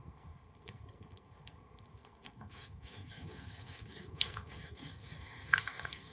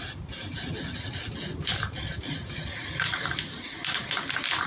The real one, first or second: second